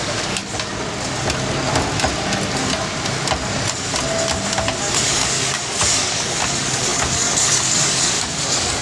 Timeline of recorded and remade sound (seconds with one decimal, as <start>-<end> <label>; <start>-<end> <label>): 0.0-0.4 remade; 0.4-4.8 recorded; 4.8-8.8 remade